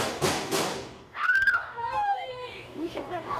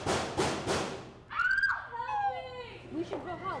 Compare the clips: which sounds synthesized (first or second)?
first